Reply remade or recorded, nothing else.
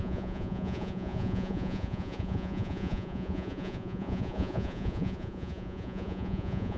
remade